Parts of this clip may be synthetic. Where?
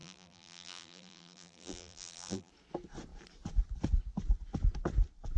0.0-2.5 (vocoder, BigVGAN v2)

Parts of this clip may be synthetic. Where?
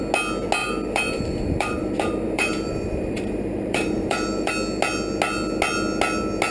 0.6-4.5 (vocoder, BigVGAN v2)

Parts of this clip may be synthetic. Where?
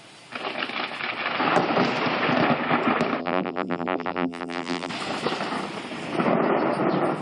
3.2-4.9 (vocoder, BigVGAN v2)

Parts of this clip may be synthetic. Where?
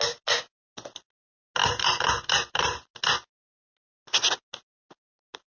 1.6-2.9 (vocoder, BigVGAN v2)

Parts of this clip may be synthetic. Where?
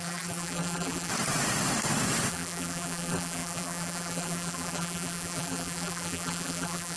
0.0-1.1 (vocoder, BigVGAN v2); 2.3-7.0